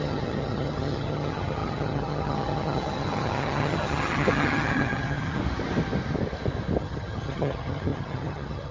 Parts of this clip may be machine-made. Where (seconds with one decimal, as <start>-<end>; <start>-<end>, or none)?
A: 0.0-5.4; 6.8-8.7

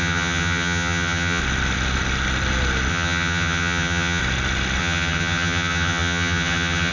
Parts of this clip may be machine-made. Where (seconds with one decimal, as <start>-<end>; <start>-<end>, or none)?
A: 0.0-1.4; 2.9-4.2; 4.8-6.9

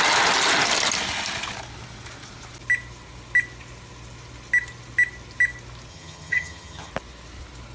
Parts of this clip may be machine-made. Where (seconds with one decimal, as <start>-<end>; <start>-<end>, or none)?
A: 5.9-6.9

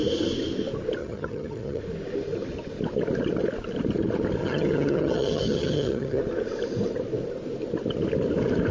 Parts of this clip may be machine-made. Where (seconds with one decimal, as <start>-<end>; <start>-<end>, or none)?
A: 1.0-1.8; 4.4-6.2

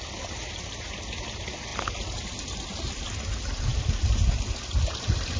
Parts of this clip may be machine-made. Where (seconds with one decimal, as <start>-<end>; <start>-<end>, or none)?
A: none

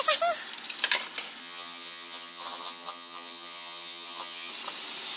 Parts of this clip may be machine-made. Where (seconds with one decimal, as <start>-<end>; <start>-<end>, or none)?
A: 1.4-4.5

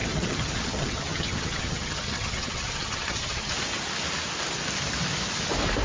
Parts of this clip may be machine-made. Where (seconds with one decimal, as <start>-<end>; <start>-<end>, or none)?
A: 0.0-3.5